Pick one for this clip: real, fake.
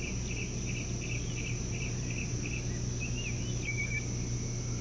real